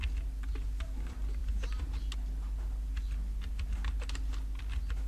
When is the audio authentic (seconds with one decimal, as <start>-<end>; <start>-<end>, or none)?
0.0-5.1